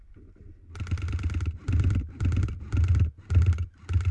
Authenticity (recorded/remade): recorded